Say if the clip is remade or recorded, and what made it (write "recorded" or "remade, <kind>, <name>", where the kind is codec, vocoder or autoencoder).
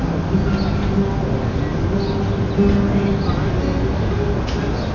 recorded